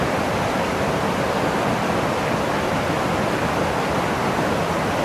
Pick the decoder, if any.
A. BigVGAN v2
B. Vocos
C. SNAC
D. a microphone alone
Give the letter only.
D